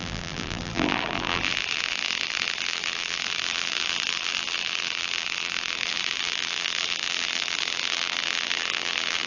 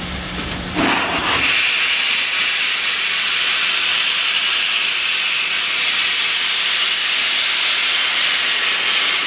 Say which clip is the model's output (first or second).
first